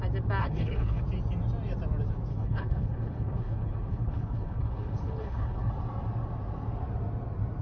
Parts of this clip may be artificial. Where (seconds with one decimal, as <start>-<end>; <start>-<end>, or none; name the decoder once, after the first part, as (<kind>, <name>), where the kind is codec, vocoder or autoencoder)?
0.4-1.0 (codec, HILCodec); 2.3-5.7